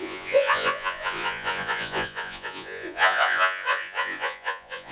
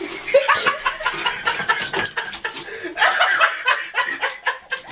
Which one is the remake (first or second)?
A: first